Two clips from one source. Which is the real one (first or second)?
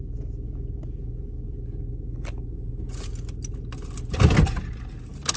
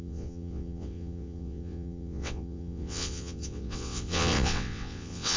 first